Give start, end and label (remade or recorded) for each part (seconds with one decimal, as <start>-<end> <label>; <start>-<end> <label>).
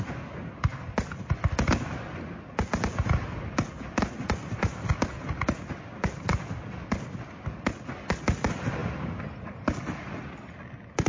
0.0-11.1 recorded